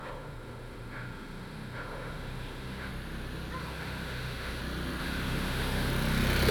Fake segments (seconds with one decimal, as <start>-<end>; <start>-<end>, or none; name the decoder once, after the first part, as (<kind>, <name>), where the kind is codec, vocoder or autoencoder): 0.0-2.9 (autoencoder, DAC-VAE); 3.6-4.6; 5.0-5.9